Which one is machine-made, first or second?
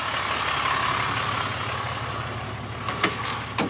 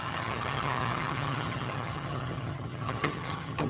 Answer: second